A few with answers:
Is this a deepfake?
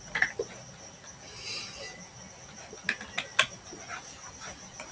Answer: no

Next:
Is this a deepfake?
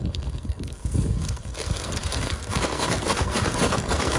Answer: yes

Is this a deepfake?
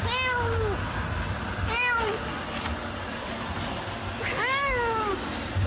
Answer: no